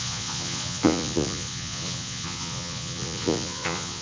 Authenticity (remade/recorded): remade